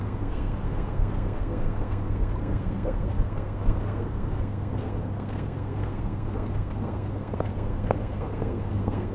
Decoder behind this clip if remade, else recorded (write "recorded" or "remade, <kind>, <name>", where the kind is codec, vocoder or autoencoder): remade, codec, SNAC